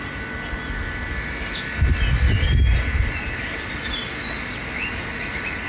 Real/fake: real